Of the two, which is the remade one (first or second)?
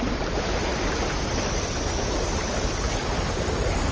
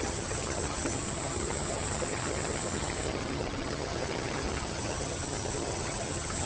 second